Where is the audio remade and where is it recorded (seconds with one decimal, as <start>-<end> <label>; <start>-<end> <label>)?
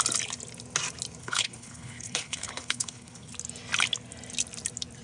0.0-1.2 recorded; 1.2-3.3 remade; 3.3-5.0 recorded